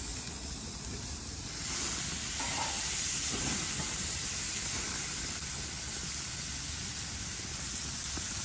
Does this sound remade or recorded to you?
recorded